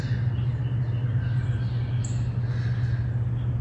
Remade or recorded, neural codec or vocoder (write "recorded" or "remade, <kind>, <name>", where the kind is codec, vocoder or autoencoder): recorded